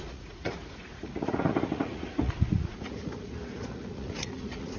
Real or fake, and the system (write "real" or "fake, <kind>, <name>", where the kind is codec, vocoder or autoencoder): fake, vocoder, Vocos